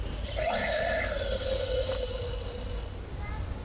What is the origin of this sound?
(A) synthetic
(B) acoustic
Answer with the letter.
B